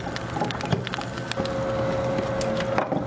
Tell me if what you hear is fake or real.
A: real